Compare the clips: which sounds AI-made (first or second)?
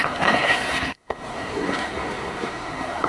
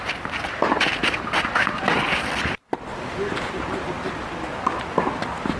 first